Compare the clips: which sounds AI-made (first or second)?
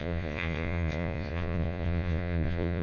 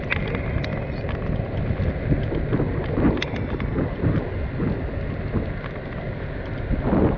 first